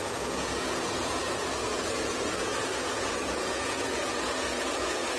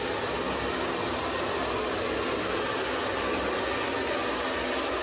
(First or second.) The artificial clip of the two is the first